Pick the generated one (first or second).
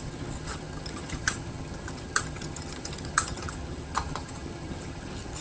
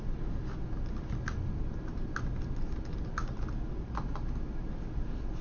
first